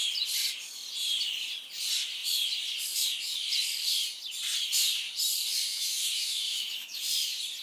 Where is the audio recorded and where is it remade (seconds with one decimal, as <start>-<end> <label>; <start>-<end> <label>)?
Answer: 0.0-5.7 recorded; 5.7-7.0 remade; 7.0-7.6 recorded